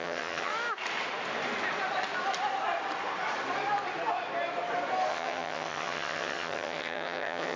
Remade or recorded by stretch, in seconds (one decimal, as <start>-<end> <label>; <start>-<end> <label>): 0.0-0.5 remade; 0.5-5.1 recorded; 5.1-7.6 remade